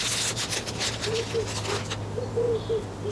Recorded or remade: recorded